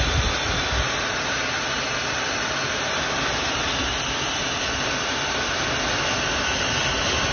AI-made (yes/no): no